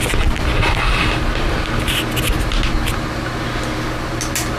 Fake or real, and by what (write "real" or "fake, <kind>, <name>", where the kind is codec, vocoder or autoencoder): real